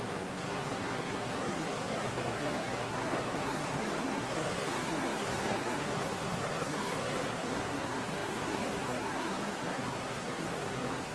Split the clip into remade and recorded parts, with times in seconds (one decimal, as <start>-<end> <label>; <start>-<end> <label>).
0.0-11.1 remade